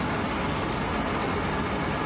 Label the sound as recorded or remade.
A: recorded